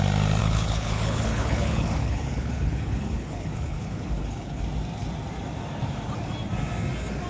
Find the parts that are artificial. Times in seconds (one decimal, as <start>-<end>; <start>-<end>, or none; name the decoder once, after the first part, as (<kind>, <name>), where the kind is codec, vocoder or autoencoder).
0.4-4.6 (codec, HILCodec)